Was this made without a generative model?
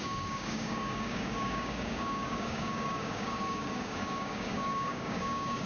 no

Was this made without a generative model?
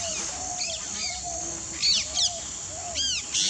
yes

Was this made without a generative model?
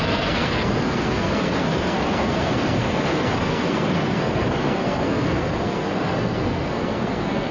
no